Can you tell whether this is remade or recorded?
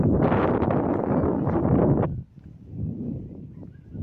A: recorded